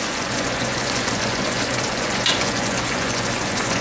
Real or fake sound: fake